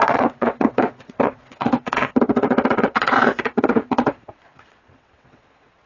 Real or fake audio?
fake